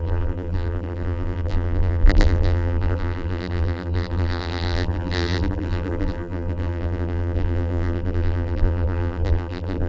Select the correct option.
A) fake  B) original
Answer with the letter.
A